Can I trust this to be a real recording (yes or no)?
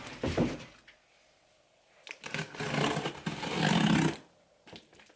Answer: yes